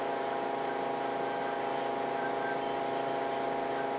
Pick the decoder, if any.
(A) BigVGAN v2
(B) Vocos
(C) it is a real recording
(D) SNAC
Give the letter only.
C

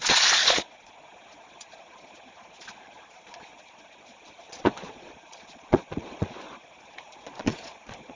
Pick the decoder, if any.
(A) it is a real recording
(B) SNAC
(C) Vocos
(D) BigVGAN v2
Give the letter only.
C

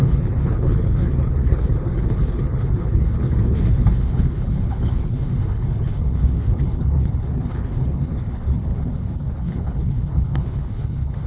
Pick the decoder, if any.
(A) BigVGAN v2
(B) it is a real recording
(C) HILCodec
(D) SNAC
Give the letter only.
C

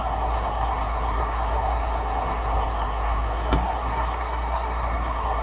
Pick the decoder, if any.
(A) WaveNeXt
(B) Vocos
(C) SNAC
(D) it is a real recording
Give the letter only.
C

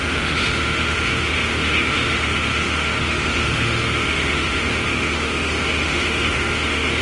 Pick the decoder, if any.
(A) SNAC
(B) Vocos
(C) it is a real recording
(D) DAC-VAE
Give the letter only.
D